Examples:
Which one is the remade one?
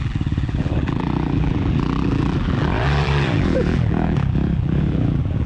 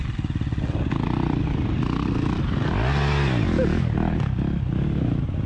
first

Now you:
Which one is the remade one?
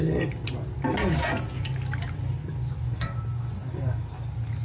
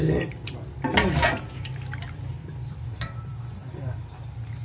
second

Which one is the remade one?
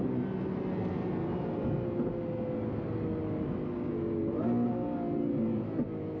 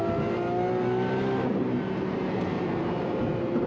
second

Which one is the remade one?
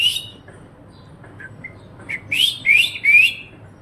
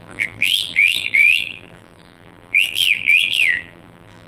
second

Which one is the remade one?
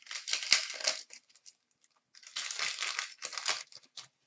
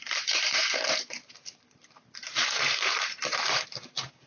second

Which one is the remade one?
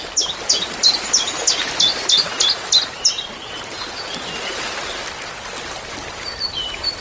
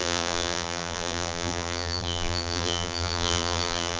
second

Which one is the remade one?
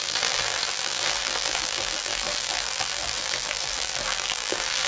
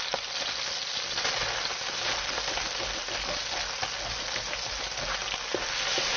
first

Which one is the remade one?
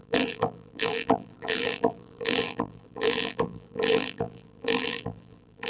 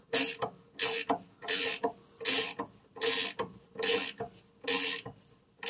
first